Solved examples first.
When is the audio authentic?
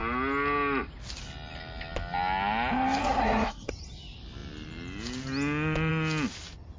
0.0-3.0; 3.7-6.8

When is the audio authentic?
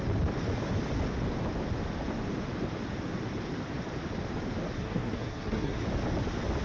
0.0-4.8; 5.8-6.6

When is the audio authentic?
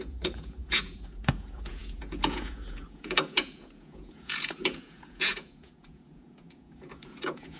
none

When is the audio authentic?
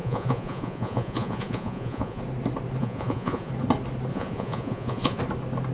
2.2-2.8; 3.5-4.1; 5.2-5.7